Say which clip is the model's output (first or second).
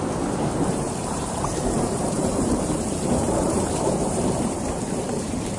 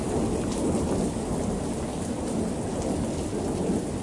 first